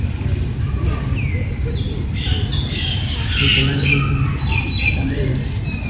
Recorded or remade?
recorded